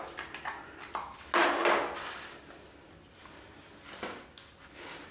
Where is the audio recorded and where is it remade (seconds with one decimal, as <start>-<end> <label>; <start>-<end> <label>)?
0.0-5.1 recorded